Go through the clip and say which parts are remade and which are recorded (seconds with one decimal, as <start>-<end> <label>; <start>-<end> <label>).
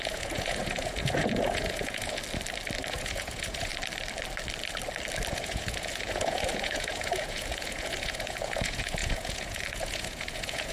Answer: 0.0-2.2 remade; 2.2-2.9 recorded; 2.9-3.7 remade; 3.7-5.3 recorded; 5.3-10.7 remade